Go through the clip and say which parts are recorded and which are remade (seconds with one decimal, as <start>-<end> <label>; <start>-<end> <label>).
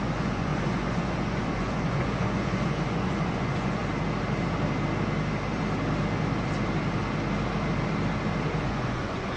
0.0-3.8 remade; 3.8-8.6 recorded; 8.6-9.4 remade